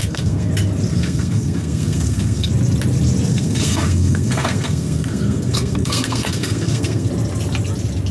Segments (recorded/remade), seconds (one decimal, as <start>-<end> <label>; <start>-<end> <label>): 0.0-0.5 remade; 0.5-0.9 recorded; 0.9-2.5 remade; 2.5-3.3 recorded; 3.3-7.1 remade; 7.1-8.1 recorded